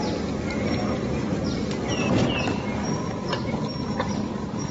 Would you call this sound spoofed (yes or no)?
no